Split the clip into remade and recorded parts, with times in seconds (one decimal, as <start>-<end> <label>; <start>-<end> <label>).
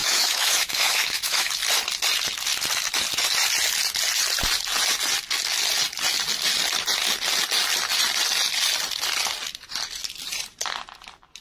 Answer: 0.0-1.5 remade; 1.5-11.4 recorded